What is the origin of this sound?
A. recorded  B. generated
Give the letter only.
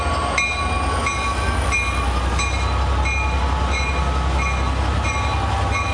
A